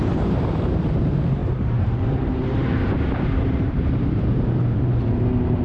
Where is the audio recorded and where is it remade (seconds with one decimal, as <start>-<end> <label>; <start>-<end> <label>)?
0.0-5.6 remade